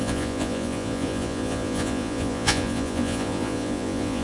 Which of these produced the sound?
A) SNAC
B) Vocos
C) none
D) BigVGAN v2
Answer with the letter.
B